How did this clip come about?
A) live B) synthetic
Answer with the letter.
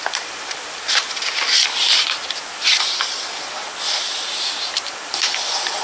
B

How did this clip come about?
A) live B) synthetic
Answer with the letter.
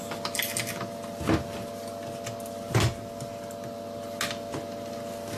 A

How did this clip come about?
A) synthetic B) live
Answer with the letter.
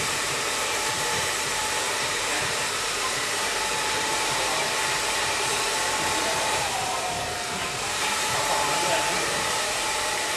A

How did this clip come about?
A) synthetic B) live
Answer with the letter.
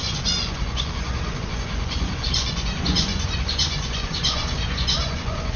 A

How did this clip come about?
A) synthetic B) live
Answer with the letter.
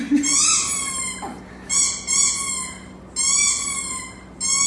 B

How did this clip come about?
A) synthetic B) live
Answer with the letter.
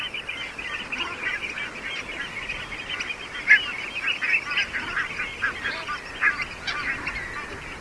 B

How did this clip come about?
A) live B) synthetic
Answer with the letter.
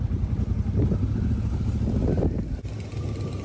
A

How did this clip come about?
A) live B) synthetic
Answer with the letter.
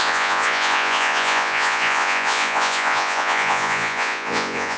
B